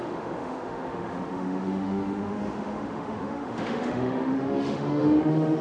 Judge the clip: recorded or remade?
remade